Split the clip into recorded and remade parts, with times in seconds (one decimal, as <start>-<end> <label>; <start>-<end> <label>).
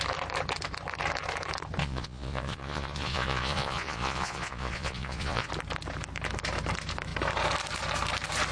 0.0-1.8 recorded; 1.8-5.5 remade; 5.5-8.5 recorded